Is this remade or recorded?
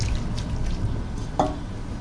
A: recorded